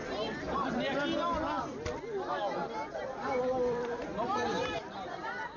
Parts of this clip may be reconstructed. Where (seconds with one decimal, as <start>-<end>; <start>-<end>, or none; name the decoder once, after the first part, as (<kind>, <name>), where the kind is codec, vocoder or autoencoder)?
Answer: 3.4-5.6 (vocoder, BigVGAN v2)